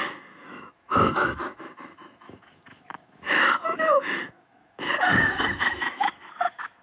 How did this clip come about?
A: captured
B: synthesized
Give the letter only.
B